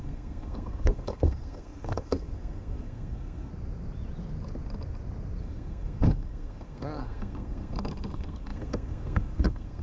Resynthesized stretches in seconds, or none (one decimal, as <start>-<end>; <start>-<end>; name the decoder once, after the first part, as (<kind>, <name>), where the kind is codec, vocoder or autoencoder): 0.0-3.5 (codec, SNAC); 5.4-9.8